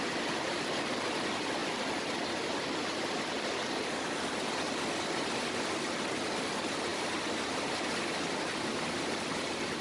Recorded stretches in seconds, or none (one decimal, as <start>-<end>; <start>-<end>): 0.0-9.8